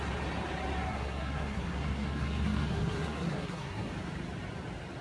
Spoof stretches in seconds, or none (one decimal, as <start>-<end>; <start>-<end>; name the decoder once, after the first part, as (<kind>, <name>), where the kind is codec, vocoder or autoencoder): 0.9-3.9 (codec, SNAC)